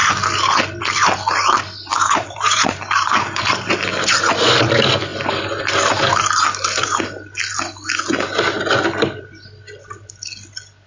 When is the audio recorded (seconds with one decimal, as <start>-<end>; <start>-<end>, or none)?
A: 0.0-1.9; 3.7-10.9